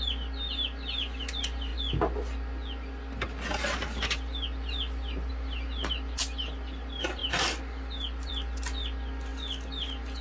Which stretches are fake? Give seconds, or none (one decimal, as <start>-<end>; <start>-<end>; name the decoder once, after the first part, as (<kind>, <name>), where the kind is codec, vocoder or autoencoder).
none